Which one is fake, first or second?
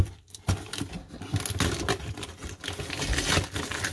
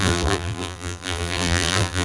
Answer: second